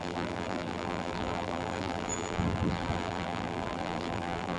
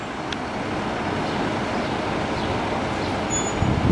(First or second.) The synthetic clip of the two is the first